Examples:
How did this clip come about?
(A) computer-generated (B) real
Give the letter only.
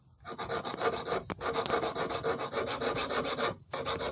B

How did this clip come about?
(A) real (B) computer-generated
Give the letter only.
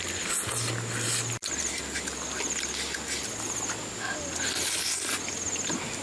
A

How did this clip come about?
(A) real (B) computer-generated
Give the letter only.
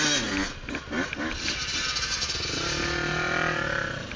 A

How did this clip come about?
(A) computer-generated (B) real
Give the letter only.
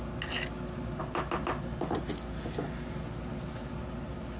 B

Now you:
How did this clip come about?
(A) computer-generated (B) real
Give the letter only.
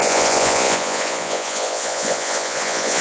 A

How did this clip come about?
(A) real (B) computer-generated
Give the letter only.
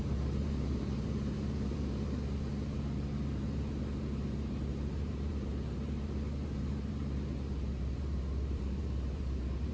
B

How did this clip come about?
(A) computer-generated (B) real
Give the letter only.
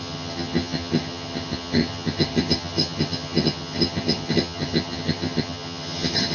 A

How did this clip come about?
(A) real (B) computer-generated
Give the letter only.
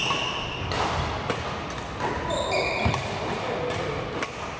A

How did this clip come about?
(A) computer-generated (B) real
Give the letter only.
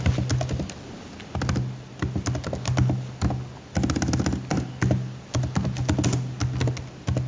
B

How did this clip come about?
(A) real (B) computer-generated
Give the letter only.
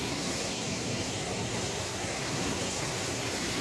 B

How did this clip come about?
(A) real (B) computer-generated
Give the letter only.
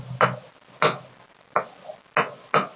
A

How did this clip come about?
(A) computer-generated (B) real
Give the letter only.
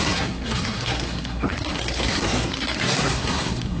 A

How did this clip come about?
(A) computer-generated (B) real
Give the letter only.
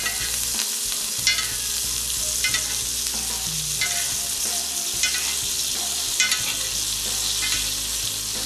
B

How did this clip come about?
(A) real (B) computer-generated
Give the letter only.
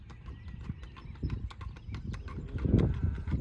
A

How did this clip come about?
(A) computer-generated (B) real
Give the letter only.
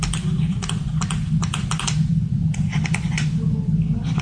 B